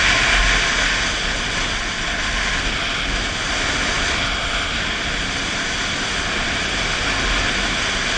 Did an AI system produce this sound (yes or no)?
no